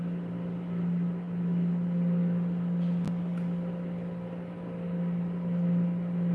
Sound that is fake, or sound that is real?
real